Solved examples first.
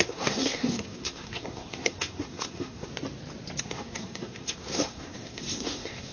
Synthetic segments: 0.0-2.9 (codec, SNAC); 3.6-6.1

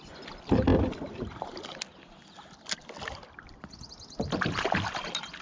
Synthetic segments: none

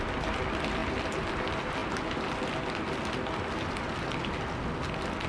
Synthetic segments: none

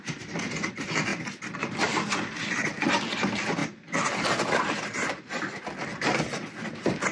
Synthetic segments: 0.0-1.1 (vocoder, BigVGAN v2); 1.6-7.1

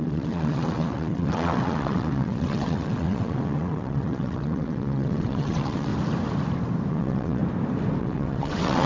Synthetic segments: 0.0-5.9 (vocoder, WaveNeXt); 6.9-7.4; 8.0-8.9

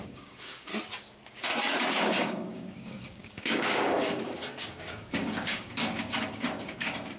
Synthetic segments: 0.0-0.7 (codec, DAC); 1.8-7.2

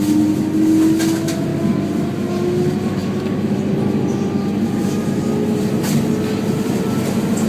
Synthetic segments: none

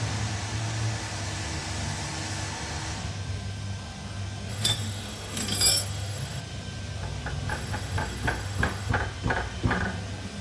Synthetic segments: 4.5-6.4 (autoencoder, DAC-VAE); 7.5-8.9